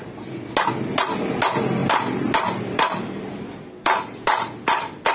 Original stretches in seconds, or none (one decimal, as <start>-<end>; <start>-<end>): 0.0-1.8